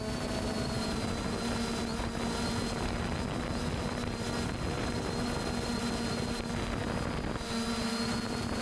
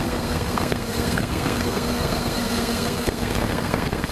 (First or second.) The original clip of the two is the first